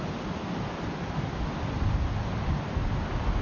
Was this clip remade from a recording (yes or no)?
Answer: no